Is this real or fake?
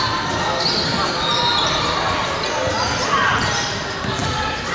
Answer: real